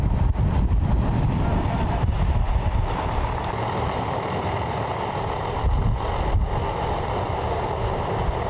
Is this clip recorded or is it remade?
recorded